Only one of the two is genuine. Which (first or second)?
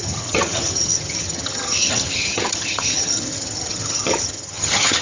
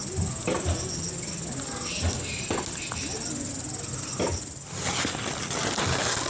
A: second